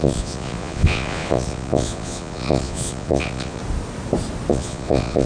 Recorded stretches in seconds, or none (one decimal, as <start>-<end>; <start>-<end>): 3.6-4.5